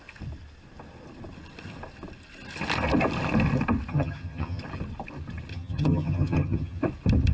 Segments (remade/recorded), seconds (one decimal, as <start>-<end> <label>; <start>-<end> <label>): 0.0-3.9 recorded; 3.9-4.6 remade; 4.6-5.5 recorded; 5.5-6.8 remade; 6.8-7.3 recorded